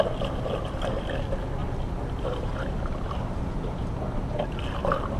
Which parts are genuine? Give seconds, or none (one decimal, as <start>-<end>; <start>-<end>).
0.0-5.2

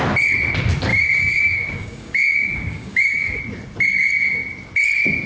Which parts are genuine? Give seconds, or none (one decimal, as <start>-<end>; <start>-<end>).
0.0-0.9; 3.4-5.3

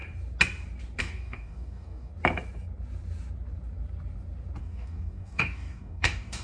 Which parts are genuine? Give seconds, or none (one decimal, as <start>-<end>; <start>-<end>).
0.0-1.0; 2.1-4.6

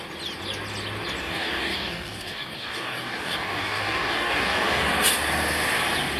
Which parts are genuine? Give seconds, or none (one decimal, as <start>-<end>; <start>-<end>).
0.0-1.2; 4.9-6.2

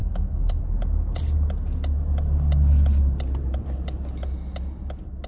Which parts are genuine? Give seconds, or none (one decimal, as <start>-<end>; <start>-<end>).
0.6-5.3

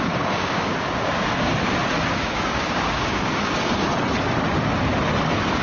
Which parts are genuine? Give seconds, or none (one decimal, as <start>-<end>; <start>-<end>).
1.5-2.1; 3.9-5.6

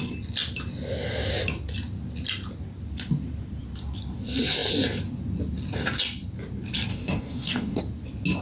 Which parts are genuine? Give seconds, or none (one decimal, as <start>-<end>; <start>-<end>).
0.0-6.9; 7.8-8.4